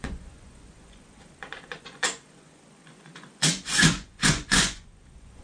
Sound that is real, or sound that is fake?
fake